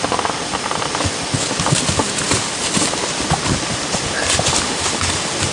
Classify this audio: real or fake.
real